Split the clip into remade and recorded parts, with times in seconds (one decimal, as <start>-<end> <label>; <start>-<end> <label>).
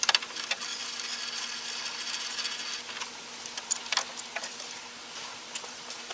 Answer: 0.0-6.1 remade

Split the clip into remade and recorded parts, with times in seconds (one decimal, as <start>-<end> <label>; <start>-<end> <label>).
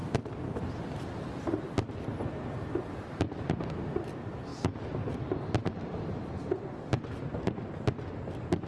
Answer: 0.0-0.7 remade; 0.7-7.3 recorded; 7.3-8.7 remade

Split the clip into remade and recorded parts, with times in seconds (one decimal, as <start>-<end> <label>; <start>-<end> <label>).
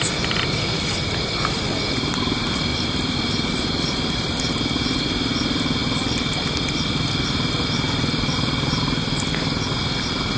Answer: 0.0-2.7 recorded; 2.7-4.5 remade; 4.5-10.4 recorded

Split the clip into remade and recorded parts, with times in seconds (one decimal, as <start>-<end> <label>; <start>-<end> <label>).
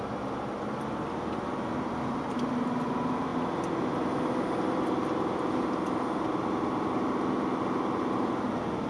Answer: 0.0-8.9 recorded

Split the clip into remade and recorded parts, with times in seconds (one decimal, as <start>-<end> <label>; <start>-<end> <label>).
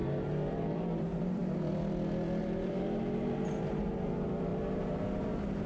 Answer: 0.0-1.4 remade; 1.4-2.4 recorded; 2.4-5.7 remade